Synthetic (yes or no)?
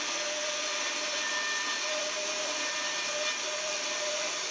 yes